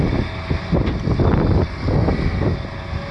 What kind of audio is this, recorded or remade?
recorded